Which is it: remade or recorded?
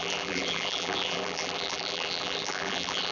remade